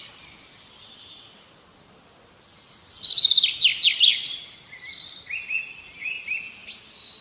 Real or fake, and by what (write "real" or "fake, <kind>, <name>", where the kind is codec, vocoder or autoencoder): real